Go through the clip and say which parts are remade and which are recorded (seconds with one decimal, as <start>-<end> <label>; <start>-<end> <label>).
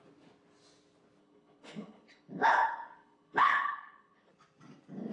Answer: 0.0-1.2 recorded; 1.2-4.3 remade; 4.3-5.1 recorded